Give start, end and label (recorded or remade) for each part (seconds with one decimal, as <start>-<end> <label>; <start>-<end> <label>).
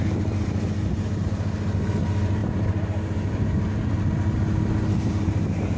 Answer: 0.0-5.8 recorded